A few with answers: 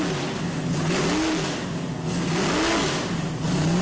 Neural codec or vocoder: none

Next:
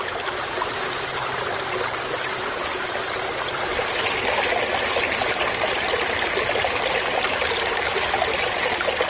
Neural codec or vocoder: none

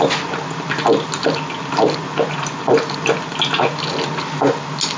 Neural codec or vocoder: none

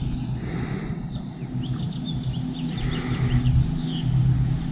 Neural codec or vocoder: none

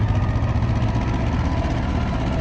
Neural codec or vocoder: none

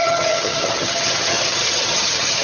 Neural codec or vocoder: vocoder, HiFi-GAN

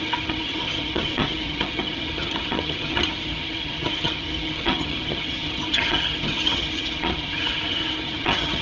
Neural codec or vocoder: vocoder, HiFi-GAN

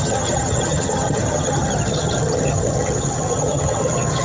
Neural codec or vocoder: vocoder, HiFi-GAN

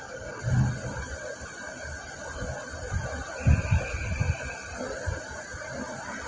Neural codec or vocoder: none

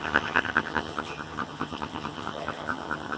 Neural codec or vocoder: vocoder, HiFi-GAN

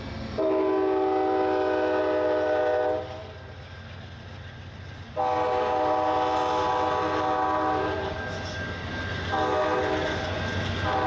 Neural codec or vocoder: none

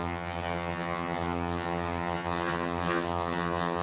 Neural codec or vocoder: vocoder, HiFi-GAN